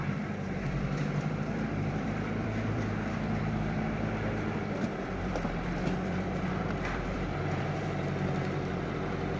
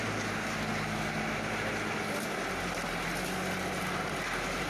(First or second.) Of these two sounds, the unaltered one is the second